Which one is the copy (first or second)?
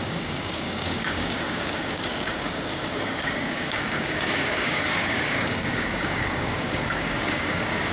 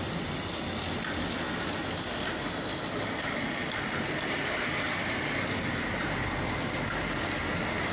first